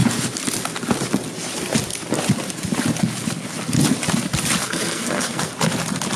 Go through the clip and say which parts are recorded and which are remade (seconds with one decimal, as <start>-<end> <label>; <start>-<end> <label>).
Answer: 0.0-4.6 recorded; 4.6-5.5 remade; 5.5-6.2 recorded